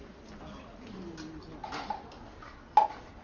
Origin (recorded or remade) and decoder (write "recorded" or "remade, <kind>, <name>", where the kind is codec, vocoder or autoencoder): recorded